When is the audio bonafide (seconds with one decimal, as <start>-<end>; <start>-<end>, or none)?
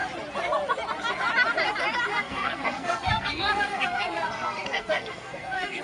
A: 0.0-2.1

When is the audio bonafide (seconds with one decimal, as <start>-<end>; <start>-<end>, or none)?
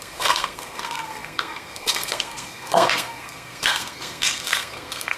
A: none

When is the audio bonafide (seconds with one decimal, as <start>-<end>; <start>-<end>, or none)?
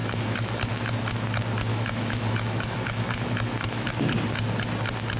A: 0.9-1.7; 3.9-5.2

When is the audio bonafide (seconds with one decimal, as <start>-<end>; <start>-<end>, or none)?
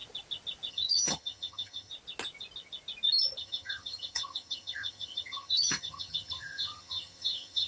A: 0.0-0.7; 1.9-3.4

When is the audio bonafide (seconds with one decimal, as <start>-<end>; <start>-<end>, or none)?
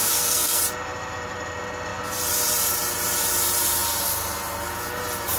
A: 0.6-5.4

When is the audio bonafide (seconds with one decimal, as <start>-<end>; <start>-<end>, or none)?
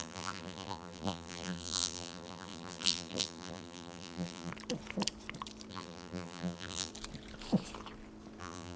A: 4.5-5.7; 6.9-8.4